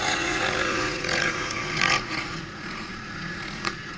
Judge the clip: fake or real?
fake